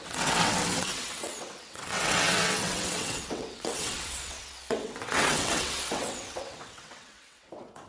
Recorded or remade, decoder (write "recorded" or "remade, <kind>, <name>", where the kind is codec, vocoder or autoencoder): remade, vocoder, WaveNeXt